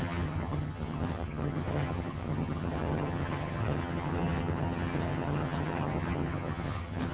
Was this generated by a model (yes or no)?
yes